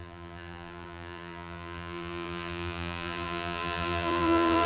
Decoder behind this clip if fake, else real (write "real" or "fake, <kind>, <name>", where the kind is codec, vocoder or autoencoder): fake, vocoder, BigVGAN v2